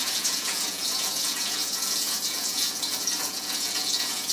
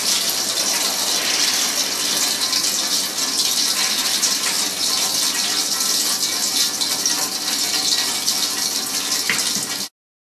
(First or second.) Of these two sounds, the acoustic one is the second